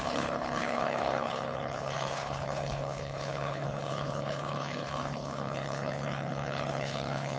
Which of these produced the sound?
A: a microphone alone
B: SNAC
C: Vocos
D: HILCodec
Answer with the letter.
D